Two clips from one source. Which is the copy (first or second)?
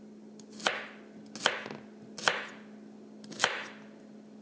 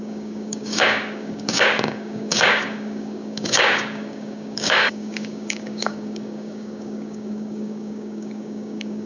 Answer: second